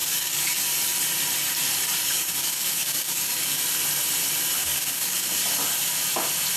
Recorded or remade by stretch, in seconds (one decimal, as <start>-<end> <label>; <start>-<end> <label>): 0.0-0.6 remade; 0.6-2.0 recorded; 2.0-3.6 remade; 3.6-4.6 recorded; 4.6-5.5 remade; 5.5-6.6 recorded